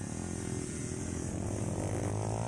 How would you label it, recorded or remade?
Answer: recorded